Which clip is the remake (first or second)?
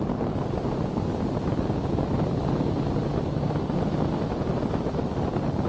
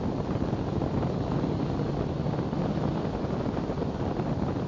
second